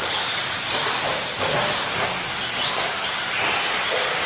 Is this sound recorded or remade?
recorded